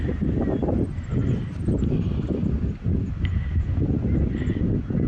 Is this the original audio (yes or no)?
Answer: yes